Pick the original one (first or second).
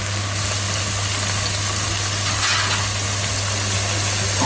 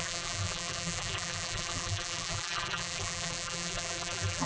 first